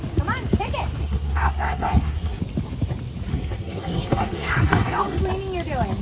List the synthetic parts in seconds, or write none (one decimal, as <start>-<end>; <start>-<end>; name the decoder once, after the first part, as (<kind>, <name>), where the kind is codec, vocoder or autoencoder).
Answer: 1.0-2.4 (codec, SNAC); 3.3-5.2